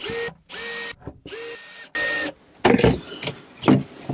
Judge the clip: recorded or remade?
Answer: recorded